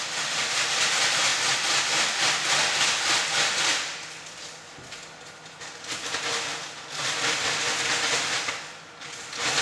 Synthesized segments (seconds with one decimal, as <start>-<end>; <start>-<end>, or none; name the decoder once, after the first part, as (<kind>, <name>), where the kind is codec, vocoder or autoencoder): none